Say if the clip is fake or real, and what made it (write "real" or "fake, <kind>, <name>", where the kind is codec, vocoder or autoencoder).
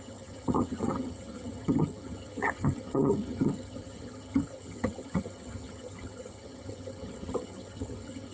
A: fake, vocoder, HiFi-GAN